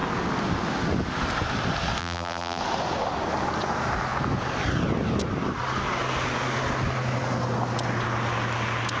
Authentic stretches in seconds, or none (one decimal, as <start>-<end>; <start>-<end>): 0.0-2.0; 2.6-9.0